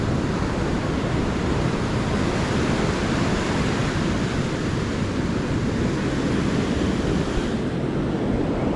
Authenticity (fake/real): fake